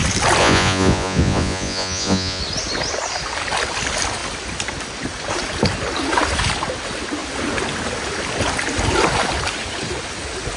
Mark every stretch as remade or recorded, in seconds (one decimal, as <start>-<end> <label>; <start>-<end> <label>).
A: 0.0-0.4 recorded; 0.4-2.4 remade; 2.4-10.6 recorded